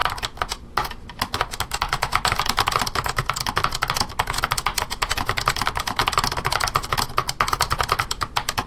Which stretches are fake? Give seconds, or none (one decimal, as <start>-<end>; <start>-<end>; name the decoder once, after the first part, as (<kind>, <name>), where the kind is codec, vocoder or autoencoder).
none